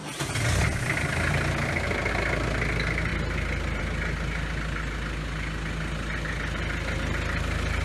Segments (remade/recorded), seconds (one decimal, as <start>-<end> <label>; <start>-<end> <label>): 0.0-7.8 recorded